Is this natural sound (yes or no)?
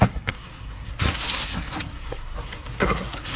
no